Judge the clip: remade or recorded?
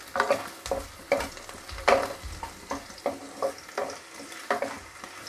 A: recorded